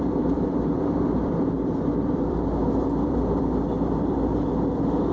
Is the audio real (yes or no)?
no